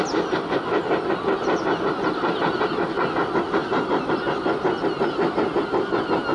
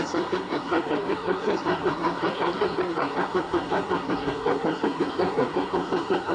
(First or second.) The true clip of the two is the first